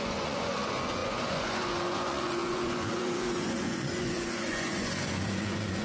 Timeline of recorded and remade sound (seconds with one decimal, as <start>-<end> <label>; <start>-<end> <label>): 0.0-5.8 remade